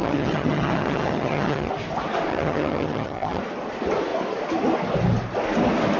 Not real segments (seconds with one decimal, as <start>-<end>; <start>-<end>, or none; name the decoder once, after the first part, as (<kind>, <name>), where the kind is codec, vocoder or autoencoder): 0.0-1.7 (vocoder, HiFi-GAN); 2.3-3.4